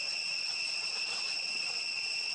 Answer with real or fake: fake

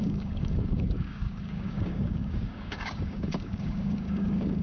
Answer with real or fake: fake